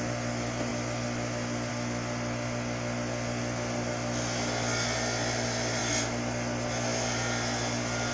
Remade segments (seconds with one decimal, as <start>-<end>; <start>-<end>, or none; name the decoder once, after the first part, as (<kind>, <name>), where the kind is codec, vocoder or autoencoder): none